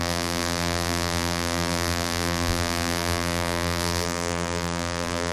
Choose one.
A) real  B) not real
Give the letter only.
B